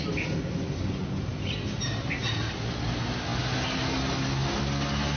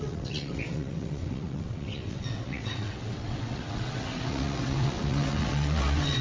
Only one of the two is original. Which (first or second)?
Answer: first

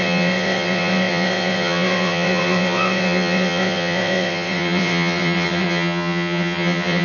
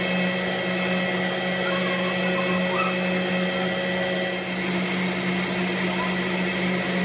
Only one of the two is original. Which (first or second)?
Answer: second